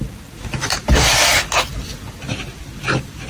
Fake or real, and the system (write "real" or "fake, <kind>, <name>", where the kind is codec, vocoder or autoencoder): real